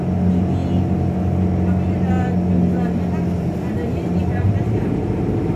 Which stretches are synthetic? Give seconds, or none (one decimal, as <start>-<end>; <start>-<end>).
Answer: 4.2-5.6